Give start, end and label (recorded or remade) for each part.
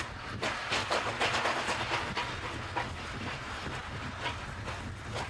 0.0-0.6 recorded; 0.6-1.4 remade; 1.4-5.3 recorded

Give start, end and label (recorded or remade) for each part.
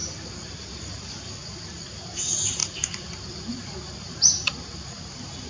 0.0-5.5 recorded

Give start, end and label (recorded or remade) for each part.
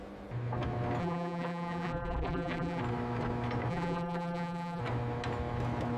0.0-1.0 recorded; 1.0-2.8 remade; 2.8-3.7 recorded; 3.7-4.8 remade; 4.8-6.0 recorded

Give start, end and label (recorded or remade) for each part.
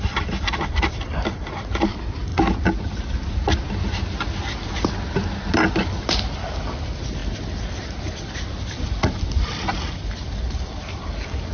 0.0-2.3 remade; 2.3-5.7 recorded; 5.7-7.2 remade; 7.2-8.2 recorded; 8.2-11.5 remade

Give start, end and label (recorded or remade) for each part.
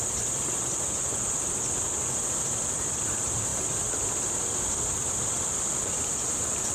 0.0-6.7 recorded